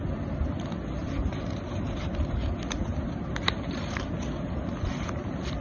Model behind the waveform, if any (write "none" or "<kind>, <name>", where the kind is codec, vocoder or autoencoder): none